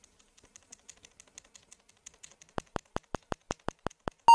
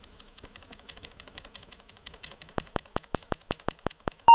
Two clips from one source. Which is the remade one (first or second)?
second